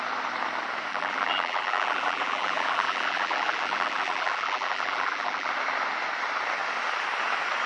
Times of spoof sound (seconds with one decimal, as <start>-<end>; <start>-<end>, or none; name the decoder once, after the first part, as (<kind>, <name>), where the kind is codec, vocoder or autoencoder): 0.9-5.5 (vocoder, BigVGAN v2)